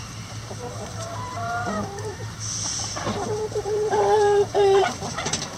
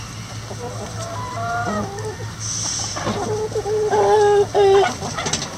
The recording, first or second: second